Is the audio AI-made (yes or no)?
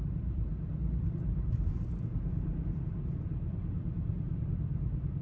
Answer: yes